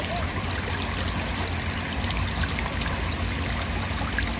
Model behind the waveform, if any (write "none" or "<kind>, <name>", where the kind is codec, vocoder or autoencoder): none